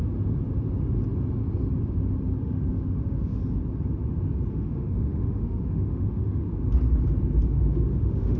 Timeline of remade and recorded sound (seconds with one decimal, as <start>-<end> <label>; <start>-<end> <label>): 0.0-2.4 recorded; 2.4-3.4 remade; 3.4-4.5 recorded; 4.5-6.5 remade; 6.5-7.5 recorded; 7.5-8.4 remade